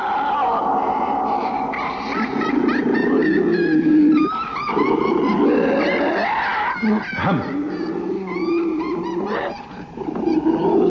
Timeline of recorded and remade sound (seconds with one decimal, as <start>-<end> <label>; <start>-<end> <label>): 0.0-10.9 recorded